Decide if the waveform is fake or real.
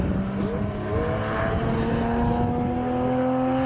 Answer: real